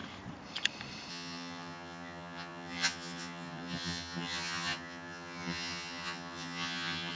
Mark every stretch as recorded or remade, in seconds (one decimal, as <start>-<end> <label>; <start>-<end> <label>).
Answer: 0.0-1.1 recorded; 1.1-7.1 remade